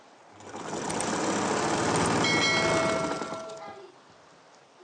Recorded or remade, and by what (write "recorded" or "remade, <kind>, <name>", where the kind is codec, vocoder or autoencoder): recorded